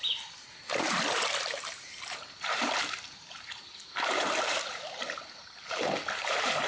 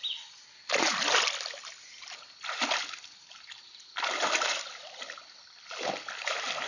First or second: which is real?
second